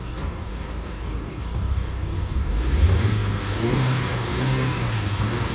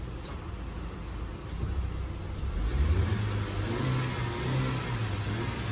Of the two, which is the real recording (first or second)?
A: second